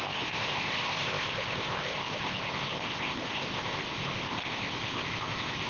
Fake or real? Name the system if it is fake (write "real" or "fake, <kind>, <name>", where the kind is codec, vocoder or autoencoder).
fake, codec, ZipCodec